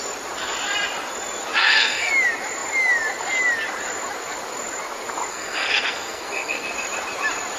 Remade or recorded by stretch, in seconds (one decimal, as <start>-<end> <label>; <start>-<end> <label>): 0.0-1.6 recorded; 1.6-2.1 remade; 2.1-5.3 recorded; 5.3-6.7 remade; 6.7-7.6 recorded